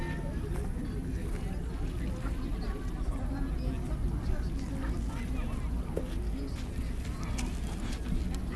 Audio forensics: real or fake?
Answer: real